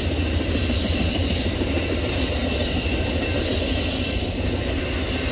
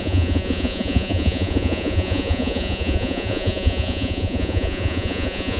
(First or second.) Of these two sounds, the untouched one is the first